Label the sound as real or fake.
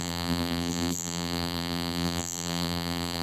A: fake